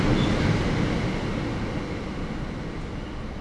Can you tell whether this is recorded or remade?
recorded